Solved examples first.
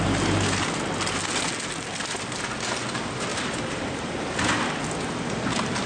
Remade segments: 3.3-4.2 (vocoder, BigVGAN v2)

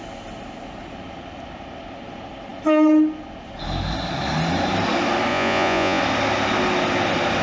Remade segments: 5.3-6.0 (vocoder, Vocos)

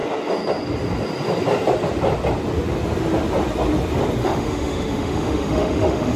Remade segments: 4.2-6.2 (autoencoder, DAC-VAE)

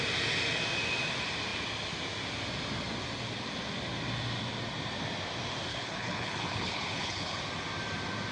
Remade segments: 5.7-7.4 (codec, HILCodec)

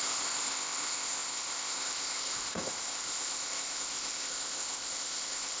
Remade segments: 0.0-5.6 (codec, ZipCodec)